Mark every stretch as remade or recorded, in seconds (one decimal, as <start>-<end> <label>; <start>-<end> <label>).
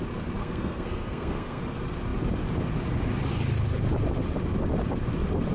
0.0-0.4 recorded; 0.4-1.6 remade; 1.6-5.5 recorded